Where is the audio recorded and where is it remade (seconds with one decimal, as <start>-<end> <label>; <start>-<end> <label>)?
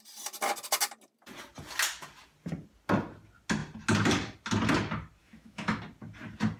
0.0-5.2 recorded; 5.2-5.8 remade; 5.8-6.6 recorded